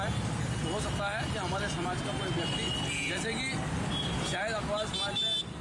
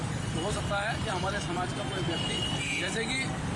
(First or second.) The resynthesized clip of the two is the second